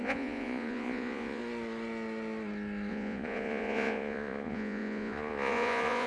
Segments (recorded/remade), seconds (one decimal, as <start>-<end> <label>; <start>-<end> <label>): 0.0-1.4 remade; 1.4-2.9 recorded; 2.9-6.1 remade